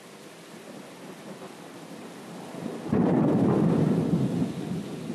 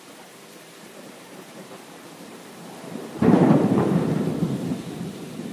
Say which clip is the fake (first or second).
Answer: second